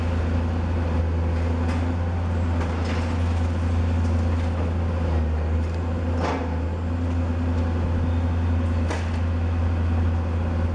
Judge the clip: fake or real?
real